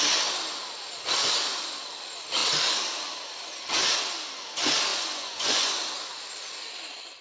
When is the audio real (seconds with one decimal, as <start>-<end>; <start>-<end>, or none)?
0.0-4.9; 5.8-7.2